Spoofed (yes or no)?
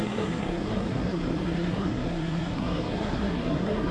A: yes